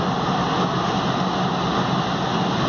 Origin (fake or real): real